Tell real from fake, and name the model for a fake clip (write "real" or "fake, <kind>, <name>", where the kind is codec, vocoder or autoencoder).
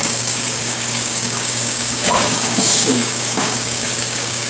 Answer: fake, codec, DAC